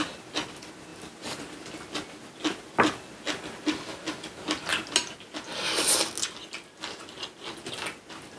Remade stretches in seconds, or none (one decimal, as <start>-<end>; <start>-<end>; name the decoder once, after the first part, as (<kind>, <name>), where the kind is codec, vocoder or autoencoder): none